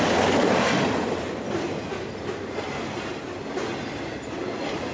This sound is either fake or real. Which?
real